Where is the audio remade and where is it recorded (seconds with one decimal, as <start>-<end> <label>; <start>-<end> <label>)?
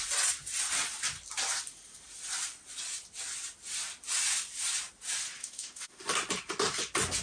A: 0.0-5.4 recorded; 5.4-6.0 remade; 6.0-7.2 recorded